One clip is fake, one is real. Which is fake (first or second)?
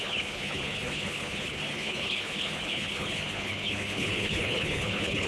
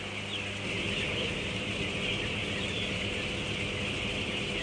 first